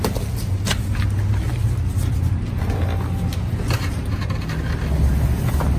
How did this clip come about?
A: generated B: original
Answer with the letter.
B